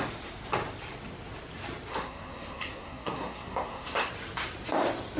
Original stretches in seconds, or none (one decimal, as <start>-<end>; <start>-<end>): 0.0-1.9; 4.1-5.2